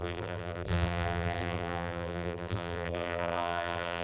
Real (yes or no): no